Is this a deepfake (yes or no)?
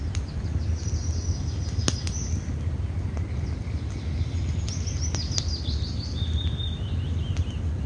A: no